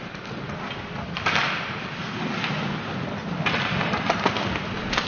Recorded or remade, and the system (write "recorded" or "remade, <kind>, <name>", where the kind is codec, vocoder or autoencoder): recorded